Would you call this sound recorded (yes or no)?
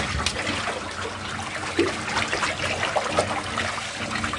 yes